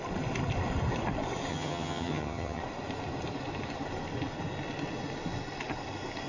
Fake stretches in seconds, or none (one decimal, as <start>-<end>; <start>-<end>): 1.5-2.6